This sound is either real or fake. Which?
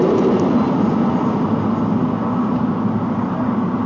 real